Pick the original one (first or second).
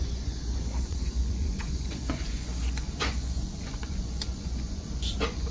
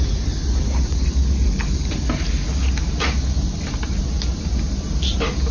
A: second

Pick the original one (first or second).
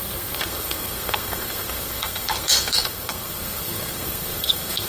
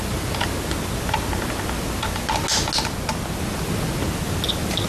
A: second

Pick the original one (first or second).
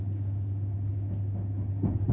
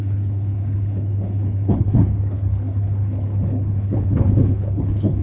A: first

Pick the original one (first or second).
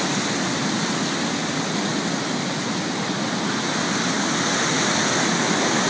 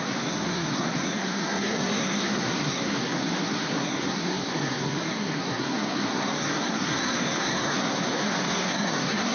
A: first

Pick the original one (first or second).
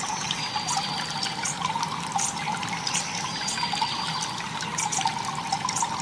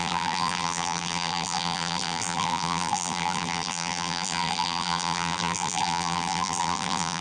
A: first